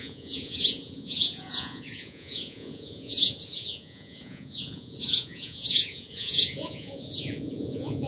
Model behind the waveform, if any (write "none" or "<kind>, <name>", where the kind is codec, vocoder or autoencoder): vocoder, Vocos